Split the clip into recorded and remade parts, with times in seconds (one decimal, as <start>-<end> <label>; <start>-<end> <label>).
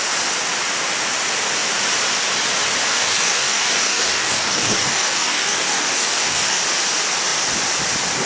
0.0-2.9 recorded; 2.9-6.6 remade; 6.6-8.3 recorded